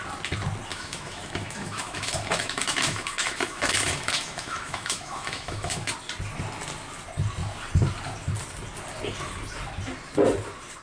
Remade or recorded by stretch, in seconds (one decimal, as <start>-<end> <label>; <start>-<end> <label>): 0.0-0.7 recorded; 0.7-5.9 remade; 5.9-10.8 recorded